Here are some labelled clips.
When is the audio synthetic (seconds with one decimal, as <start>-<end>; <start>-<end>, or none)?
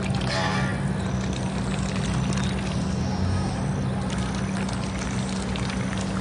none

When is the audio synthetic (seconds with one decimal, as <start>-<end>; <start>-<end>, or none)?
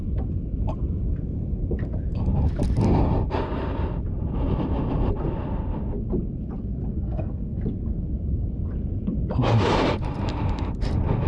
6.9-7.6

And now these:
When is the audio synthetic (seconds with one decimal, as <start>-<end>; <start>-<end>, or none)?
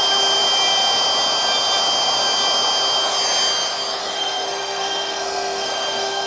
4.0-6.3